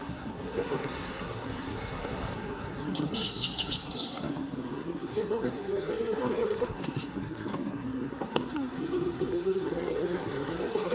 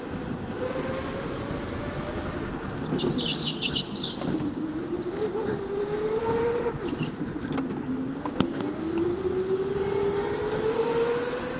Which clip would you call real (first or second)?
second